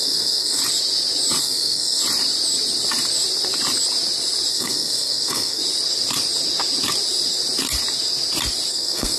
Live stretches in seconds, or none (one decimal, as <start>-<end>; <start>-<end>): 0.6-1.4; 2.0-4.5; 5.6-8.7